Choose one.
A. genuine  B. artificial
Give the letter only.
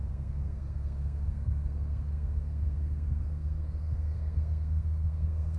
B